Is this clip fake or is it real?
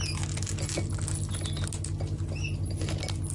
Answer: real